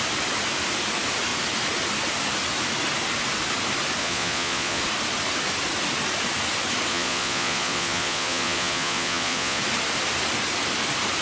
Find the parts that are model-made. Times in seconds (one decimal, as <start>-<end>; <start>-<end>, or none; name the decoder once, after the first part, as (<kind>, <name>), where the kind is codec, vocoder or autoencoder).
4.0-4.8 (vocoder, Vocos); 6.9-9.6